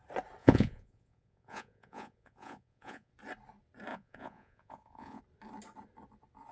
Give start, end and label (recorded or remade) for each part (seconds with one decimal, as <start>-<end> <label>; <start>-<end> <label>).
0.0-0.4 recorded; 0.4-3.1 remade; 3.1-3.9 recorded; 3.9-5.2 remade; 5.2-6.5 recorded